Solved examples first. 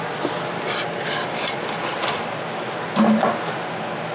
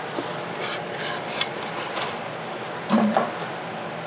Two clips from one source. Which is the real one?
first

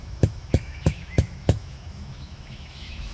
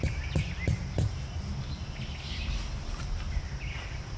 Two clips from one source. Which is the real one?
second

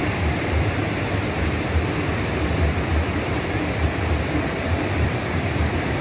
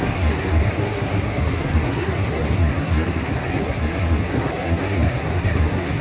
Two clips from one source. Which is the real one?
first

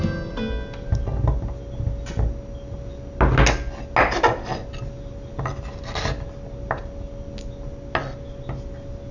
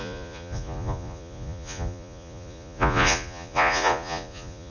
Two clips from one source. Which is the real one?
first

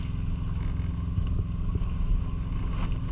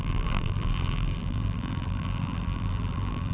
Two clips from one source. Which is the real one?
first